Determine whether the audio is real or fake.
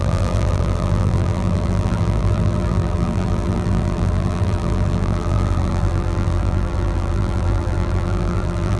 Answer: fake